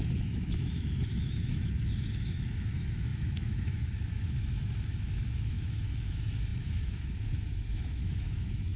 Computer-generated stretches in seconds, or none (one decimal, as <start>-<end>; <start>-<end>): 0.0-8.8